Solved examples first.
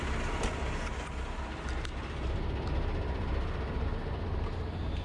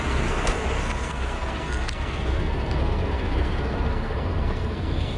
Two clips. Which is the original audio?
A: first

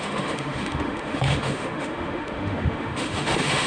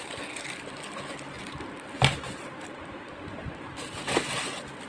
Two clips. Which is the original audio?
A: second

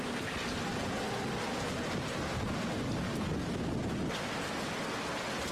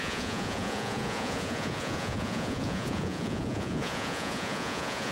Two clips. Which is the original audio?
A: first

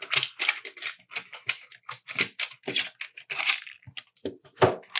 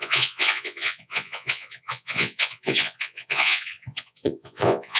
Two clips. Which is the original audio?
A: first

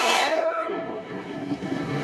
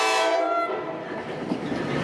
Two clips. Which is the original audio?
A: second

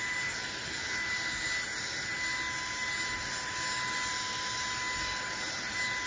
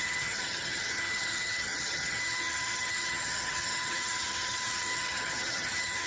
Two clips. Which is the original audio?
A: first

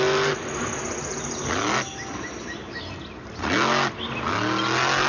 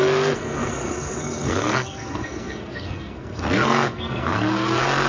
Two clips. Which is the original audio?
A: first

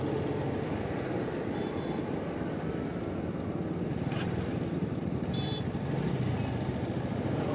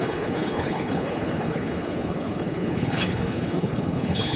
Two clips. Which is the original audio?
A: first